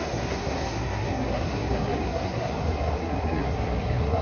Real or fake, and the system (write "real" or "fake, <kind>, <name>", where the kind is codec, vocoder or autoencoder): fake, codec, SNAC